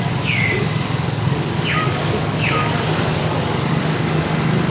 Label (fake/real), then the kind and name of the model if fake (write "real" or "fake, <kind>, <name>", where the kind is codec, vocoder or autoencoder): fake, codec, DAC